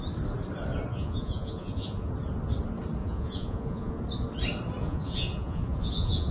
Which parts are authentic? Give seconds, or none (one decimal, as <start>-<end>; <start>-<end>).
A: 0.0-0.9; 2.1-3.0; 4.0-4.8